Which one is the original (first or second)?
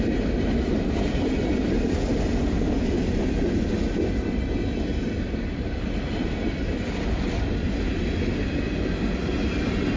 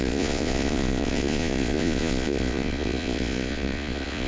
first